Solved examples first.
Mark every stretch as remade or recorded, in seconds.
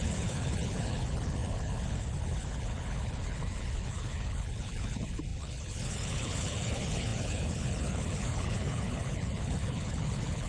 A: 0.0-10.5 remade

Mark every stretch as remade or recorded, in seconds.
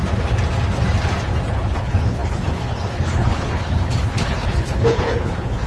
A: 0.0-1.5 recorded; 1.5-5.7 remade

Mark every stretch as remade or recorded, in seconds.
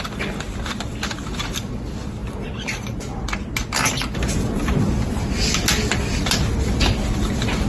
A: 0.0-7.7 recorded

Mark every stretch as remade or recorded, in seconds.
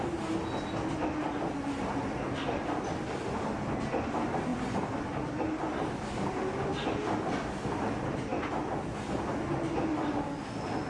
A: 0.0-10.9 recorded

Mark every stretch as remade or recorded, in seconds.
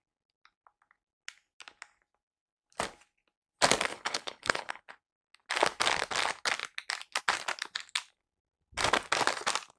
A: 0.0-3.9 recorded; 3.9-4.8 remade; 4.8-9.8 recorded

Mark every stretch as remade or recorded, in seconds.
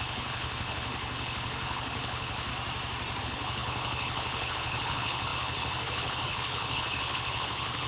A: 0.0-2.5 remade; 2.5-3.2 recorded; 3.2-7.9 remade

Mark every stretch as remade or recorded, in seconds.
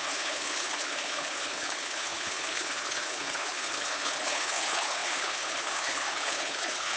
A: 0.0-7.0 remade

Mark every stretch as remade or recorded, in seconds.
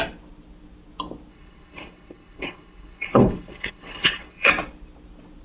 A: 0.0-1.3 recorded; 1.3-4.5 remade; 4.5-5.4 recorded